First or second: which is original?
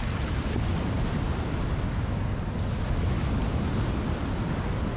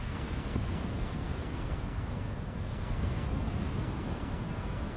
first